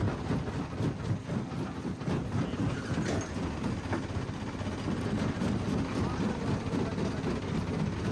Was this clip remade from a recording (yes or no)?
no